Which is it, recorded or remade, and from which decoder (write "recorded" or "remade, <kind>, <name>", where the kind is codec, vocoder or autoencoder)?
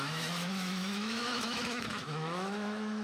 remade, autoencoder, DAC-VAE